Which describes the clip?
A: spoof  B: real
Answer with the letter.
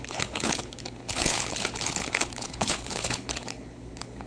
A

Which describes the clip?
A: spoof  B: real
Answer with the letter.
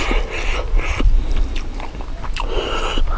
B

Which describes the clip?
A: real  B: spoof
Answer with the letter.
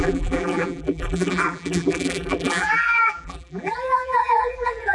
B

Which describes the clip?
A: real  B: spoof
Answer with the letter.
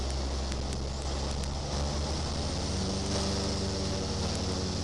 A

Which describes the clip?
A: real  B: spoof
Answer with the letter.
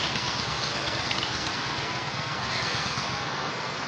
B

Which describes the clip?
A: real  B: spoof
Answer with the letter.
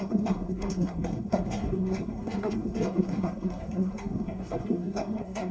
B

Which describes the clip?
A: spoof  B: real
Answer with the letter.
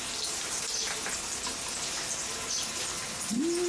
B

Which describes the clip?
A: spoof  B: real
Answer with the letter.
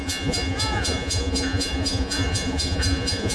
A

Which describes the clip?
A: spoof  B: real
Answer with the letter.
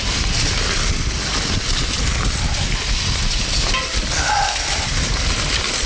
B